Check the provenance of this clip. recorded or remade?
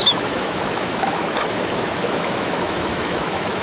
remade